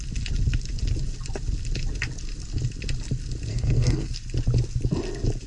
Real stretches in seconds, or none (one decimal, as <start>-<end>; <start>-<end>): 0.0-3.5; 4.1-5.5